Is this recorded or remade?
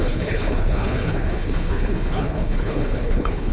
remade